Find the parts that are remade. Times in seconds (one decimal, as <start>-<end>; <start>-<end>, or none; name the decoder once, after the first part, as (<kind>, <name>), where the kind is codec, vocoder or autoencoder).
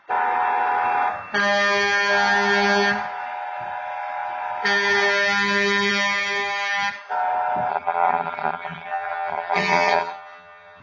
7.7-10.8 (vocoder, HiFi-GAN)